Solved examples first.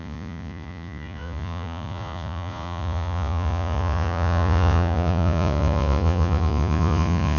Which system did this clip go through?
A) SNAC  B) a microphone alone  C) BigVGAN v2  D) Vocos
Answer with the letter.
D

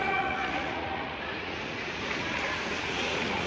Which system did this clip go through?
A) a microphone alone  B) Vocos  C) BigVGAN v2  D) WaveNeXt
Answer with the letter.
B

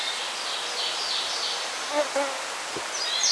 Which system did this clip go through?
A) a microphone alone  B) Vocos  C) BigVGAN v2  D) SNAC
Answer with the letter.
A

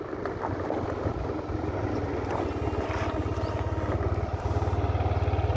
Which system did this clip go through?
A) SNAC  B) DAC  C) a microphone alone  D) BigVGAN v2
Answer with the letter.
C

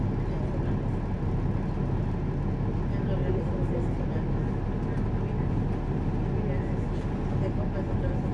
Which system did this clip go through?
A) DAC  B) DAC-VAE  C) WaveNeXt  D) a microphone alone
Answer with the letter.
D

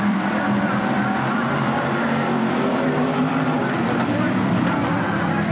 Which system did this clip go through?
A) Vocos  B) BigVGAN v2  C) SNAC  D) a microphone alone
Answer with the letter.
B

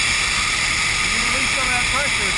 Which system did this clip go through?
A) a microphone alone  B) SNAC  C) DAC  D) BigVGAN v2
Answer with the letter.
A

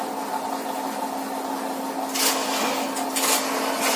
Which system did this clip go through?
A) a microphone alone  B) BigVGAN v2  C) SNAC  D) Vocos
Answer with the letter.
A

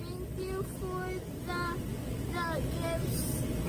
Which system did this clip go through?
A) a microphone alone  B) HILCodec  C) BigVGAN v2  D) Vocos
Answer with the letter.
A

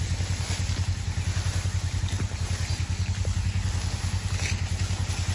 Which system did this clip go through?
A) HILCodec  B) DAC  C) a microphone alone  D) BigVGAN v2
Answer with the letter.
C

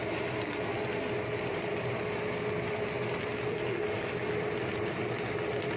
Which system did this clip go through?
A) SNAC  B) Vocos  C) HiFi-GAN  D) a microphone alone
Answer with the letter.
D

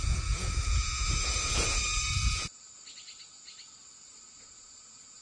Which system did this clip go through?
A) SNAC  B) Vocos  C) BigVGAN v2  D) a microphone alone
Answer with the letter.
B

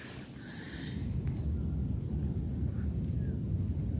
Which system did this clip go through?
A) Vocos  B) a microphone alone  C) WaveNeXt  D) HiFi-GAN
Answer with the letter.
B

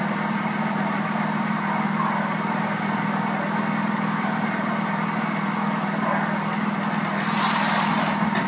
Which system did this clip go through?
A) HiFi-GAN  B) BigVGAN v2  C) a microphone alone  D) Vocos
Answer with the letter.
C